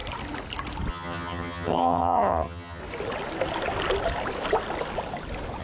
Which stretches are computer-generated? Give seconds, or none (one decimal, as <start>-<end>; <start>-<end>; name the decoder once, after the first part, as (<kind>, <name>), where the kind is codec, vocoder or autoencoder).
0.9-2.8 (vocoder, HiFi-GAN)